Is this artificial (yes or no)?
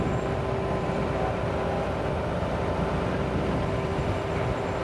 yes